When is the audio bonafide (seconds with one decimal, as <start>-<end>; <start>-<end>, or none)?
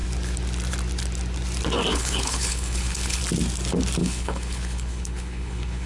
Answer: 0.0-1.9; 3.2-4.0